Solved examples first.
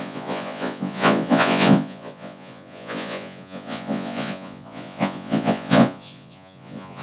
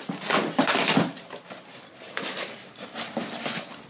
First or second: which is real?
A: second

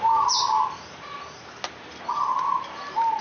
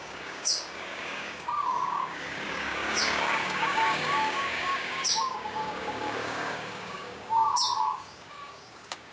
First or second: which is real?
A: first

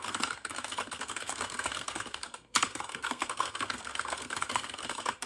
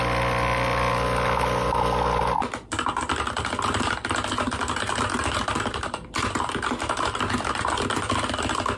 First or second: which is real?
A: second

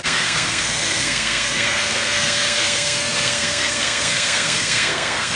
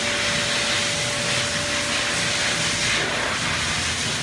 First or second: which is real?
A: second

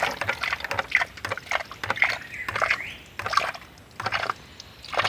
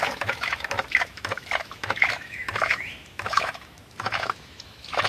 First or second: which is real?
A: first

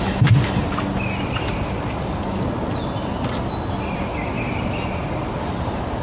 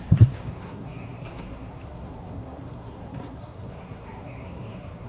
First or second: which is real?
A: first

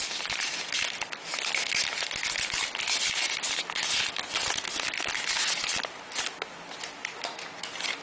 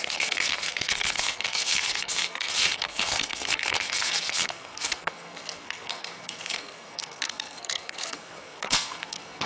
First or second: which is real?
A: first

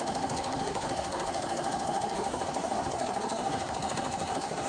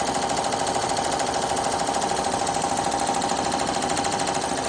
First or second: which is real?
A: second